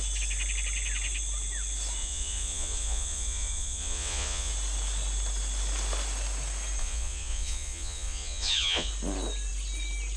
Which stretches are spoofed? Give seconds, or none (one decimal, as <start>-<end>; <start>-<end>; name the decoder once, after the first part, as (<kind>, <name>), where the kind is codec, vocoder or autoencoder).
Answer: 2.0-4.5 (vocoder, Vocos); 6.8-8.9